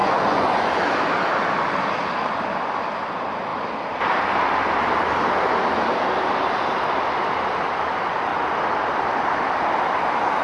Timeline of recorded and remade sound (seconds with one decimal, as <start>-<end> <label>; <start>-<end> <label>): 0.0-0.8 remade; 0.8-10.4 recorded